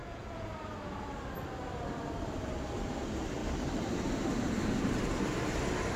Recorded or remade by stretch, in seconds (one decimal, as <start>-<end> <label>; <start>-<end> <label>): 0.0-0.5 remade; 0.5-6.0 recorded